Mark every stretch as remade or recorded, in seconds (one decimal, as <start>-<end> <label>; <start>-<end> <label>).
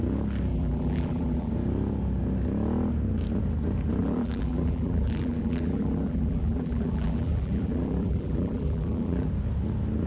0.0-0.5 recorded; 0.5-1.5 remade; 1.5-4.0 recorded; 4.0-9.3 remade; 9.3-10.1 recorded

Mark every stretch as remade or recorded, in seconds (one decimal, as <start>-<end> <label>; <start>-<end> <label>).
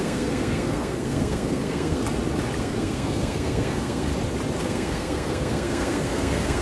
0.0-2.0 remade; 2.0-2.6 recorded; 2.6-4.1 remade; 4.1-4.6 recorded; 4.6-6.6 remade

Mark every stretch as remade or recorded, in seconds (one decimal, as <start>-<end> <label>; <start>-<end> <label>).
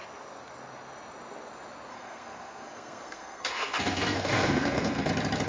0.0-1.9 recorded; 1.9-5.1 remade; 5.1-5.5 recorded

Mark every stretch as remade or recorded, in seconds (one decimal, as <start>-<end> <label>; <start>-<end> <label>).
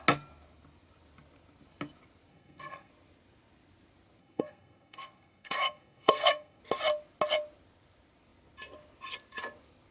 0.0-2.3 recorded; 2.3-2.9 remade; 2.9-4.2 recorded; 4.2-6.6 remade; 6.6-9.9 recorded